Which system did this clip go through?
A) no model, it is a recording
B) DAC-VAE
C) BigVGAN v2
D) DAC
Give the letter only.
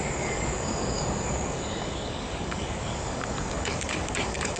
D